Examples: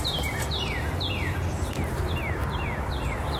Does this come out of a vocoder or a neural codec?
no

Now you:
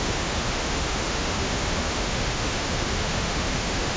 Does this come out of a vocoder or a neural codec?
yes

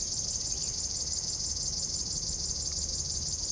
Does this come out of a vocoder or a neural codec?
yes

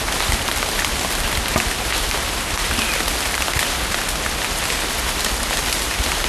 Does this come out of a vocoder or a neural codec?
no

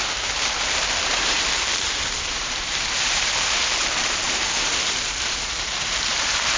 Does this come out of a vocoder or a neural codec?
yes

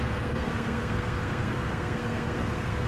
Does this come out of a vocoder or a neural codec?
yes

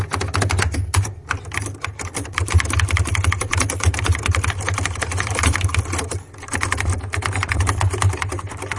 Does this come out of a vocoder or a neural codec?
no